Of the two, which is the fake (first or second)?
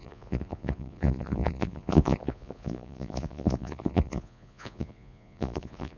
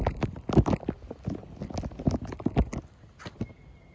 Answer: first